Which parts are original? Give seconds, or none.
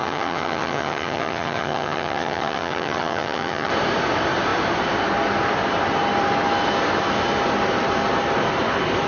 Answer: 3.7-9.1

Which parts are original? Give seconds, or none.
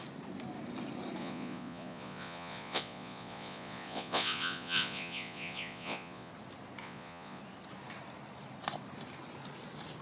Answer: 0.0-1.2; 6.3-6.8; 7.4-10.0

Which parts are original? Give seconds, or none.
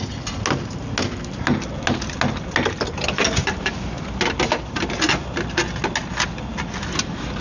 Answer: 0.0-3.4; 4.2-7.4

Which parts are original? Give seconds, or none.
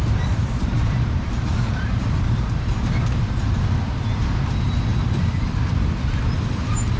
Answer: 0.0-0.7; 3.6-7.0